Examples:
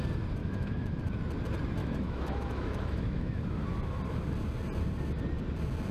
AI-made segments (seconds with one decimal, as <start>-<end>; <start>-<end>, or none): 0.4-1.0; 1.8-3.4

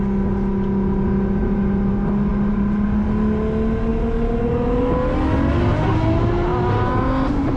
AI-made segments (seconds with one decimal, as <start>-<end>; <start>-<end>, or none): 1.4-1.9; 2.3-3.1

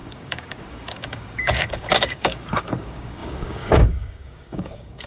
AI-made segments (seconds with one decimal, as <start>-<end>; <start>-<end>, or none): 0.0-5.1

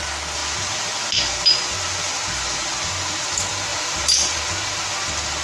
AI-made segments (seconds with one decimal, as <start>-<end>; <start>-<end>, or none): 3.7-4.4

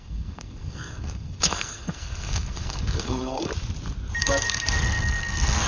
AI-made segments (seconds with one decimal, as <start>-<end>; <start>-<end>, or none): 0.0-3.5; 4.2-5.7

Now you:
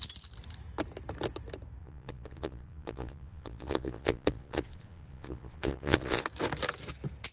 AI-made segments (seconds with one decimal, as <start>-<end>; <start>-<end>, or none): 1.8-6.2